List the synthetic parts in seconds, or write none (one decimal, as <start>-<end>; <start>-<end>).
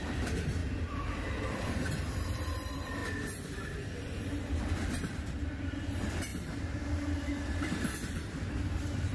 0.0-3.0; 3.5-9.1